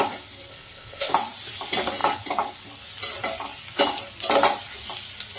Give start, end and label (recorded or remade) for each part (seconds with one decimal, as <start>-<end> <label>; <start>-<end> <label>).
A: 0.0-0.5 recorded; 0.5-1.1 remade; 1.1-5.4 recorded